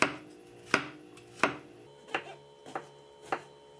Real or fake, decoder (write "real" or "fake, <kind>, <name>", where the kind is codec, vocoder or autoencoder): real